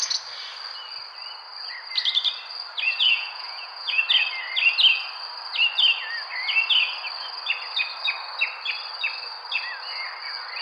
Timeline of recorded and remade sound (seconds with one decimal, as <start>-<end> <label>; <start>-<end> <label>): 0.0-3.0 recorded; 3.0-4.0 remade; 4.0-10.6 recorded